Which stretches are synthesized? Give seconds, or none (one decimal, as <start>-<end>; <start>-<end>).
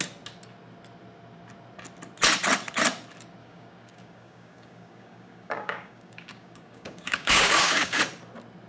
3.4-8.0